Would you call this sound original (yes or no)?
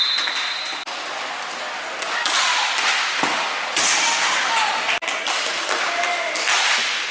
yes